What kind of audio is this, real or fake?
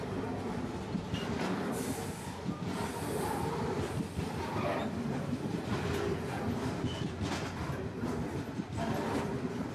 real